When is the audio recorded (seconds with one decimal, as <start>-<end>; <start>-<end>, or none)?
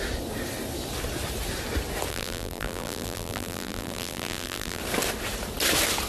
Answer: 0.0-2.1; 4.8-6.1